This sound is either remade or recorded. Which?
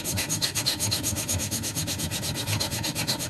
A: remade